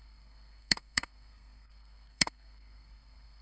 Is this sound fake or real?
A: fake